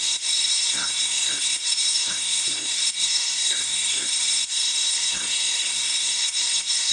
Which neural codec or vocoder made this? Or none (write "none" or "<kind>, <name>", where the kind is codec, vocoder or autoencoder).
codec, SNAC